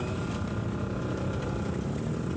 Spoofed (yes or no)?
no